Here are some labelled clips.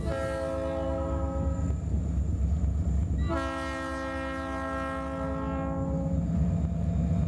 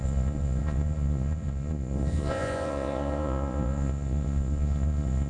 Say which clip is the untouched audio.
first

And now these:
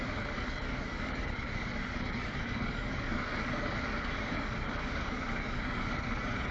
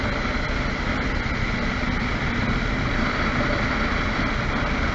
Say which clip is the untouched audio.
second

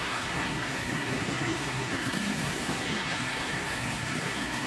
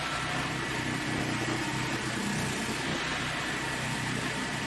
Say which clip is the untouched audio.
second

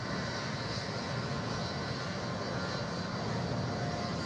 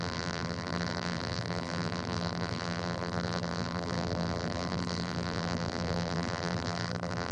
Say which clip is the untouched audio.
first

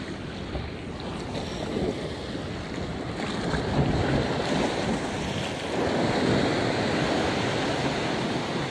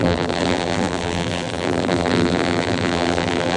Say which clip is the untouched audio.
first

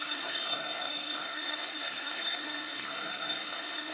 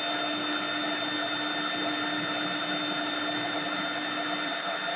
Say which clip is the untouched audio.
second